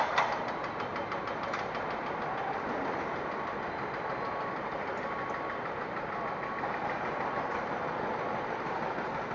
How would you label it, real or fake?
real